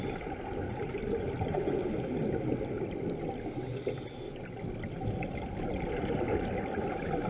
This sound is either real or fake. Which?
real